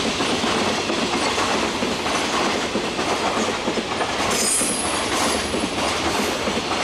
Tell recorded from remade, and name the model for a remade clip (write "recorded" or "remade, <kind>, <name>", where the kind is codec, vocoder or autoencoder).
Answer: recorded